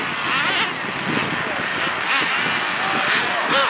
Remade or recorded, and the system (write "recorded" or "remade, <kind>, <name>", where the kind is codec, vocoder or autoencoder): recorded